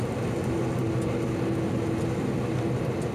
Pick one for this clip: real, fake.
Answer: real